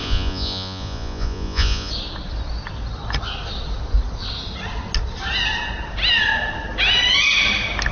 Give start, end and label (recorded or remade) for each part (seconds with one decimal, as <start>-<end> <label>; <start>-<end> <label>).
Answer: 0.0-1.9 remade; 1.9-7.9 recorded